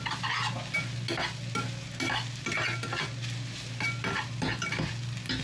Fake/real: real